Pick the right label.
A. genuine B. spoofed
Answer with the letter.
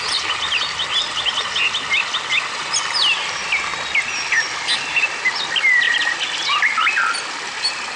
A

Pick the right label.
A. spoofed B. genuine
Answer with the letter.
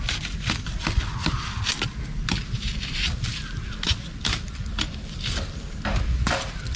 B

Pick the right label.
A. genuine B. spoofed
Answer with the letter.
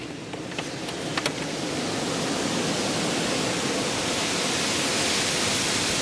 A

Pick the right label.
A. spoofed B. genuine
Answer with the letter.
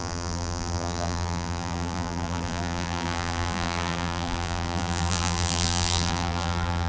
A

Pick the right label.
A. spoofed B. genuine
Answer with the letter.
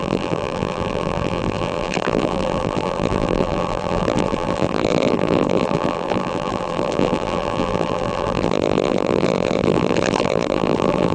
A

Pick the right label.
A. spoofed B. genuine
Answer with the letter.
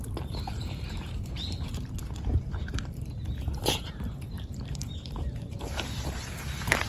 A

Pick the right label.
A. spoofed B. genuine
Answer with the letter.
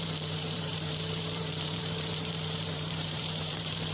A